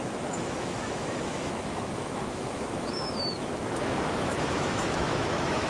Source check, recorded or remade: remade